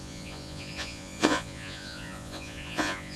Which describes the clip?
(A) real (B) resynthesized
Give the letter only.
B